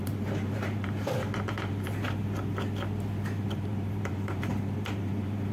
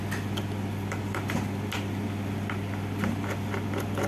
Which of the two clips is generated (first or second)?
first